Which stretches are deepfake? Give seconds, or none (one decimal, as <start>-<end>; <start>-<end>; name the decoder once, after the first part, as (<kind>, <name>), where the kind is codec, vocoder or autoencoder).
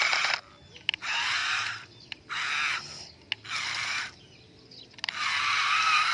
none